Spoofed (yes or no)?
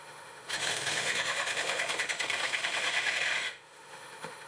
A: yes